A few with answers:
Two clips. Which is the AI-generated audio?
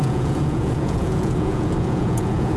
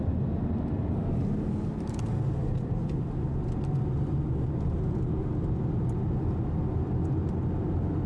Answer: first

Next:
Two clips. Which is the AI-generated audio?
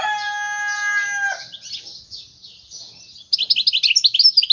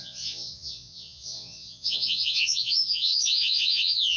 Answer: second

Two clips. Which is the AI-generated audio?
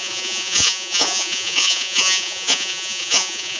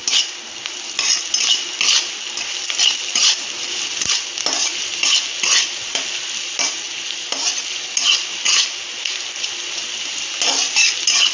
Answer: first